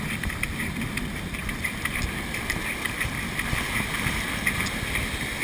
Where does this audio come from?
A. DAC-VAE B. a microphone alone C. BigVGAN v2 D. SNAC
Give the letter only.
B